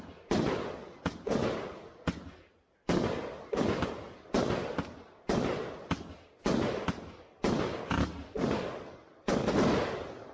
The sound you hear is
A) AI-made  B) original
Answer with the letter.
B